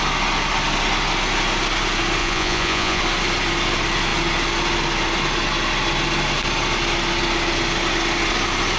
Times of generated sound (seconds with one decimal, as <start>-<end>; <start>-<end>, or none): 2.2-3.0